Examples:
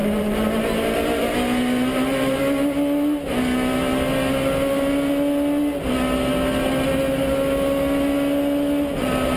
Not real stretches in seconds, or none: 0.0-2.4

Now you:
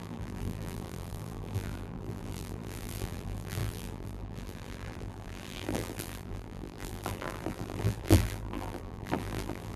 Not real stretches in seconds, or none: 0.0-9.8

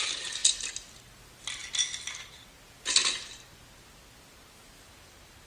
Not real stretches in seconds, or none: 4.6-5.5

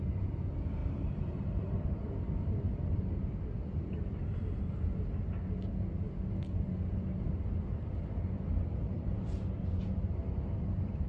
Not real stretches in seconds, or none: 0.8-3.0

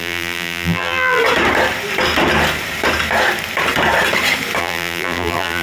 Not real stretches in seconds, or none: 0.0-1.2; 4.6-5.6